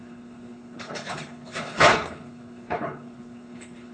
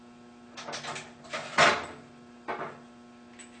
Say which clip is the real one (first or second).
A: second